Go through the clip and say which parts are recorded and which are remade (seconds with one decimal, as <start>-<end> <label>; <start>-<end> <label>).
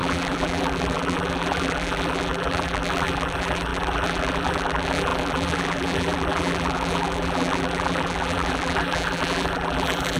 0.0-10.2 remade